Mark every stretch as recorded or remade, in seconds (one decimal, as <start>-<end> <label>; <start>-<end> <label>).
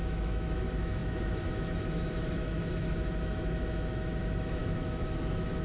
0.0-5.6 remade